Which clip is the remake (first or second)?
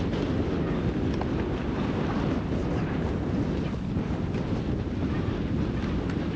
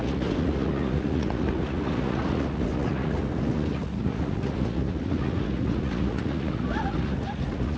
second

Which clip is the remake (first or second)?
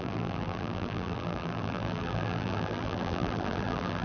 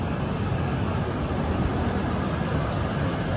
first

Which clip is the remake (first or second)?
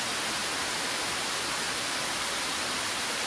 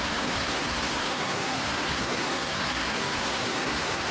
second